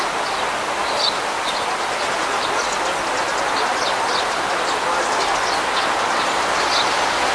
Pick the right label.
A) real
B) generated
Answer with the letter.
A